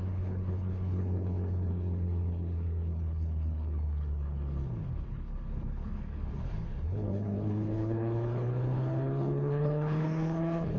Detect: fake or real fake